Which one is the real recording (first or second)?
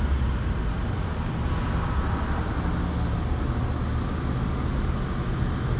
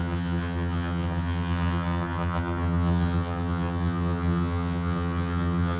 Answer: first